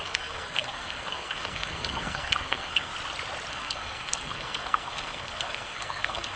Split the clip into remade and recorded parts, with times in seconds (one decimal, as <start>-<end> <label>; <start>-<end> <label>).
0.0-2.9 remade; 2.9-3.5 recorded; 3.5-6.4 remade